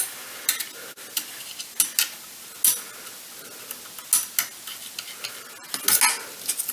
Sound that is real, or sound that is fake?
real